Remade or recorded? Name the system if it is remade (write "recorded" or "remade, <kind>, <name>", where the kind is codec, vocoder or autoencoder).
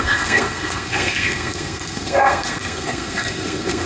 remade, codec, SNAC